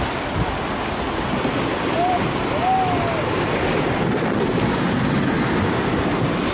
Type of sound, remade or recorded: recorded